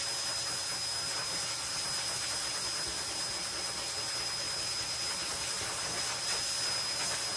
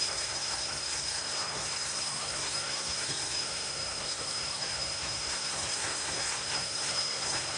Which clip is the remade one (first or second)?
second